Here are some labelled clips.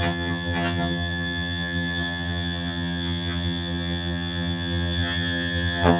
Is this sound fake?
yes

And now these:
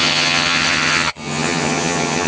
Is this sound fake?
yes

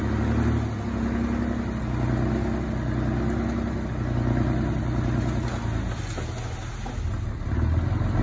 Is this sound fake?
no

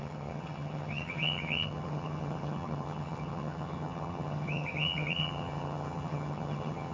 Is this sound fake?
yes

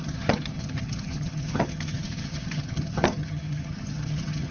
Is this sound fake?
yes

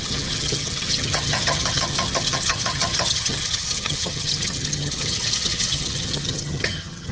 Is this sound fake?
yes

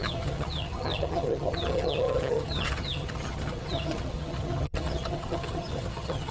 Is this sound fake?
yes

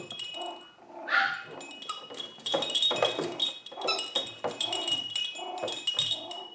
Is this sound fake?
no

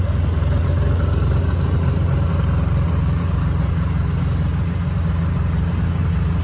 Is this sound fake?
no